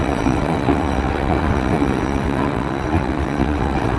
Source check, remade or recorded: remade